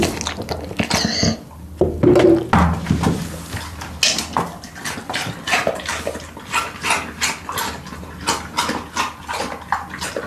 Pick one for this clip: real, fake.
real